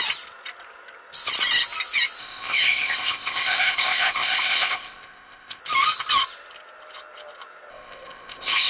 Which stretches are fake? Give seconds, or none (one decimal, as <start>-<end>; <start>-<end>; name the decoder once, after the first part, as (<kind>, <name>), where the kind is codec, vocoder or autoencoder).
2.2-5.6 (codec, ZipCodec); 7.7-8.7